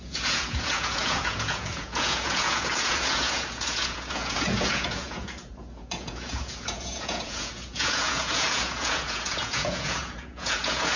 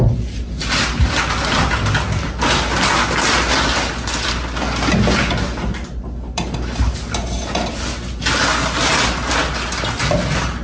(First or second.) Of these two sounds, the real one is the second